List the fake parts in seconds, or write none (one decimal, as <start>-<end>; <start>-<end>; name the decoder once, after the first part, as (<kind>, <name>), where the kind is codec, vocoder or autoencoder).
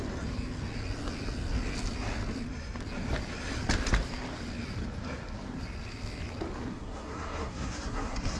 6.7-8.4 (codec, SNAC)